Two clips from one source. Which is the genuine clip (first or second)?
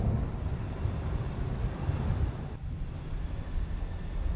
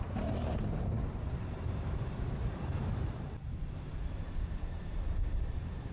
first